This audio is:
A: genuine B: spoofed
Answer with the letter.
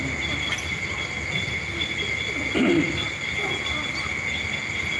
A